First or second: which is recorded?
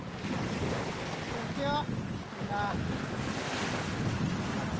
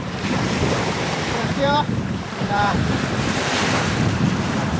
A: first